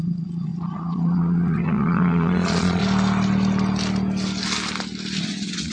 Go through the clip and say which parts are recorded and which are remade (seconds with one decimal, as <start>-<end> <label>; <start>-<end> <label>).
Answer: 0.0-2.8 remade; 2.8-5.2 recorded; 5.2-5.7 remade